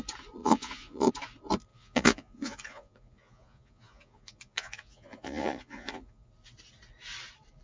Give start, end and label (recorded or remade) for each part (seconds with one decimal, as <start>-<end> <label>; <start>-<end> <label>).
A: 0.0-0.4 recorded; 0.4-1.1 remade; 1.1-1.7 recorded; 1.7-6.3 remade; 6.3-7.6 recorded